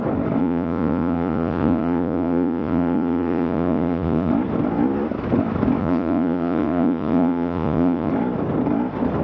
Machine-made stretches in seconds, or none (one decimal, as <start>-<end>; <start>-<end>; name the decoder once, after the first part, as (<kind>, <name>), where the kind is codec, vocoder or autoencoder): 0.4-4.3 (vocoder, Vocos); 5.8-8.1